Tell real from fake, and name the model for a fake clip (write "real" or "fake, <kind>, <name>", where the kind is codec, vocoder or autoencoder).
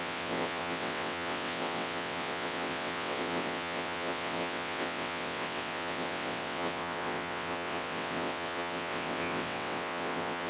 fake, vocoder, WaveNeXt